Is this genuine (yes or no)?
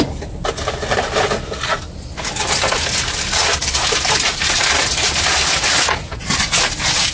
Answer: yes